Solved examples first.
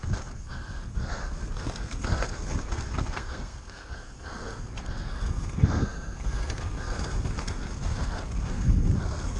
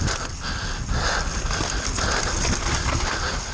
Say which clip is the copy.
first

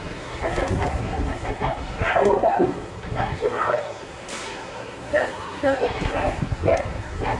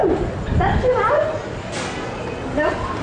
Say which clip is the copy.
first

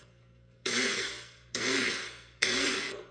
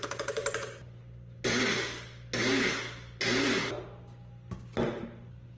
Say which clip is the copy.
first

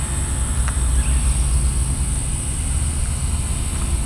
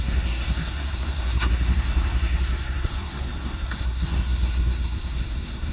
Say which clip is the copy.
second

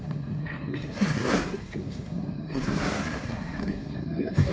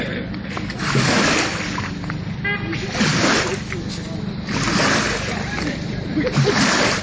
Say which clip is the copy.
first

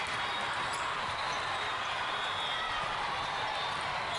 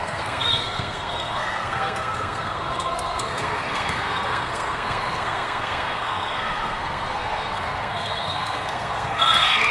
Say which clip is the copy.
second